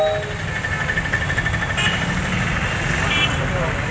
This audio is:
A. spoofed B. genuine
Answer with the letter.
B